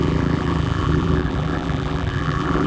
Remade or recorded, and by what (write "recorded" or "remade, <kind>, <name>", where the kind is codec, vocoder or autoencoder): remade, vocoder, BigVGAN v2